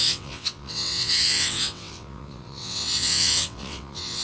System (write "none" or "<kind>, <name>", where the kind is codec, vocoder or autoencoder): vocoder, WaveNeXt